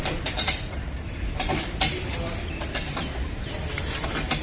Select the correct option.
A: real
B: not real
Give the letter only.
B